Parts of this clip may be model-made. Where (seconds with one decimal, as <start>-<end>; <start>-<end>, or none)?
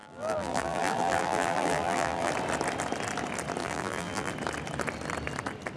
0.0-2.3; 3.6-4.3